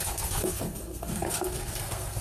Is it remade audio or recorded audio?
remade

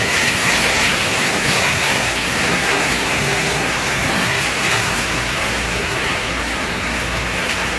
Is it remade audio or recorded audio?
remade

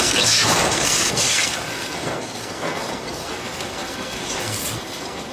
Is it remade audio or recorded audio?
remade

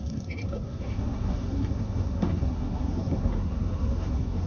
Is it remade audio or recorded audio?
remade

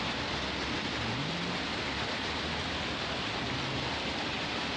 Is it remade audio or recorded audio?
recorded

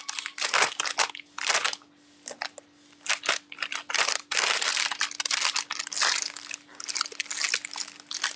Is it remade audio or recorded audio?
recorded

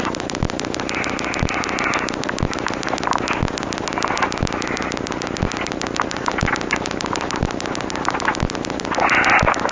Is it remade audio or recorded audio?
recorded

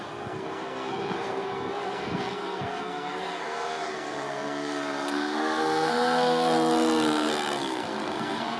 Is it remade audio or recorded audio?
remade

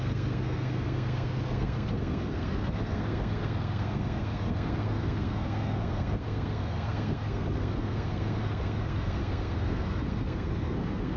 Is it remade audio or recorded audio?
remade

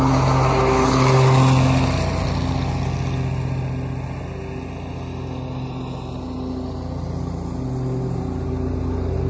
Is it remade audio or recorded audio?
recorded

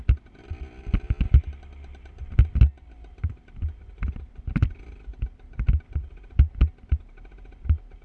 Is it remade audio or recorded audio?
recorded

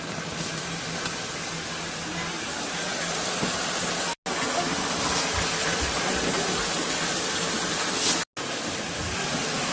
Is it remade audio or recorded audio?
recorded